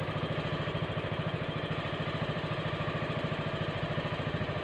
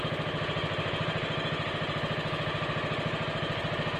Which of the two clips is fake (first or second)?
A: first